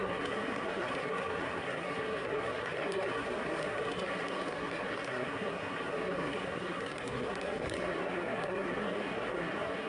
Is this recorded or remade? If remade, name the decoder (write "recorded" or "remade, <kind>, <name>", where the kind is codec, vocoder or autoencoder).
remade, codec, SNAC